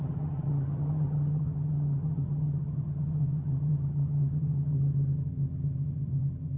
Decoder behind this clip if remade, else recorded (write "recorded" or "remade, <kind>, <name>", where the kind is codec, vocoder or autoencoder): remade, vocoder, HiFi-GAN